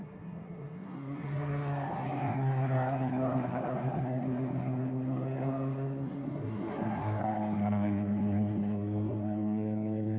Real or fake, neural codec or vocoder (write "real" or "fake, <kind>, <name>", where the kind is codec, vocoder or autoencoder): fake, codec, SNAC